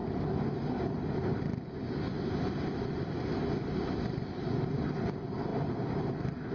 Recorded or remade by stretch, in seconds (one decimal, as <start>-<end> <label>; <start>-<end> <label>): 0.0-6.5 recorded